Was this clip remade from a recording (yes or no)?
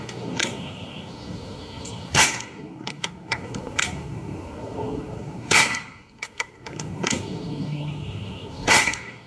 yes